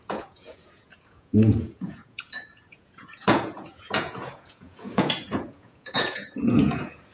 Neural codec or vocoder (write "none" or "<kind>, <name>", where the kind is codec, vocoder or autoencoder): vocoder, Vocos